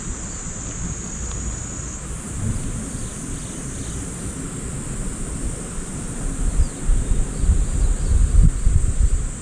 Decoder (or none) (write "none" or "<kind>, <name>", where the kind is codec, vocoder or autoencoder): none